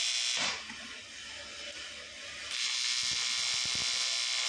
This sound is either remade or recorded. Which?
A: recorded